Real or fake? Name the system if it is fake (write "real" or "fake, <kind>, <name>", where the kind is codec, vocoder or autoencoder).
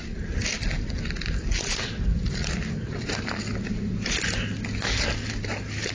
real